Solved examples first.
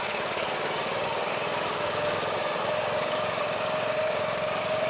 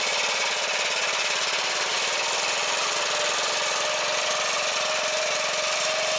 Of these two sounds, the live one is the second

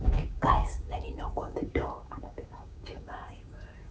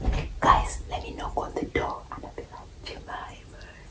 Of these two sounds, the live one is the second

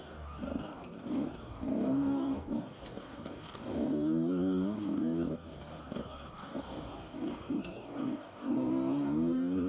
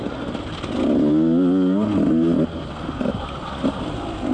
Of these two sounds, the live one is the second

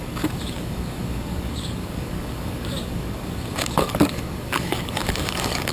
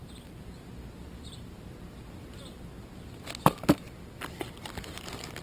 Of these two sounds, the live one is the second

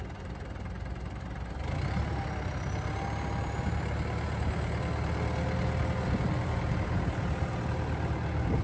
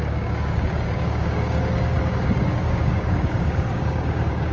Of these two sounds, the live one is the first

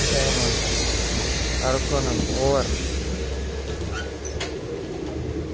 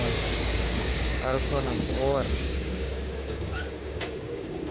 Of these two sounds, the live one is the first